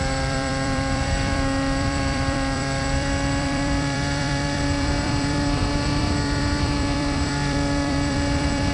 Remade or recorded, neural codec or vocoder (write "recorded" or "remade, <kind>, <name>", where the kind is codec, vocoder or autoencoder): remade, vocoder, BigVGAN v2